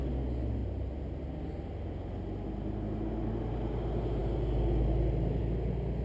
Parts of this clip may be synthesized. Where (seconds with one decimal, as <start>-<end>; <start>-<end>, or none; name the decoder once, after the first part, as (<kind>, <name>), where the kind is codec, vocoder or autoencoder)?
0.6-1.2 (vocoder, BigVGAN v2)